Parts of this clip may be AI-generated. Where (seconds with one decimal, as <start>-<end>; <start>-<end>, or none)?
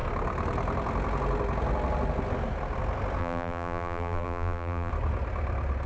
3.2-4.9